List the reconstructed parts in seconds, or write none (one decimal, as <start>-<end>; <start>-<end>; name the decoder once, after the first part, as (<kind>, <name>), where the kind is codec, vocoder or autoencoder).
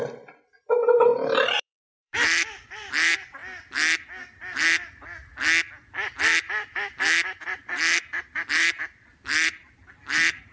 0.0-3.4 (vocoder, BigVGAN v2); 8.5-10.5